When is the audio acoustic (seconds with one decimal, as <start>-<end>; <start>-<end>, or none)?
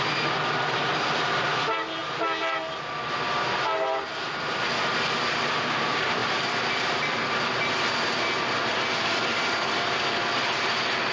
0.0-11.1